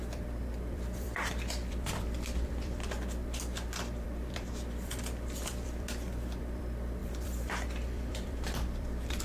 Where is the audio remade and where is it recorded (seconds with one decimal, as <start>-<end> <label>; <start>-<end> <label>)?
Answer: 0.0-9.2 remade